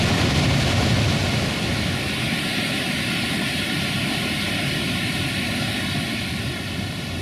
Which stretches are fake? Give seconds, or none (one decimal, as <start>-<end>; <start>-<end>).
none